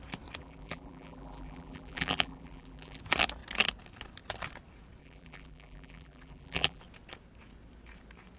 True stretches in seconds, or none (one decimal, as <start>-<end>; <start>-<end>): 0.0-0.4; 3.0-5.0; 6.8-8.4